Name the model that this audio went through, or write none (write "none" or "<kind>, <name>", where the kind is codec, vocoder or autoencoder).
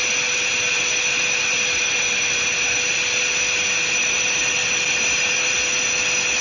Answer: none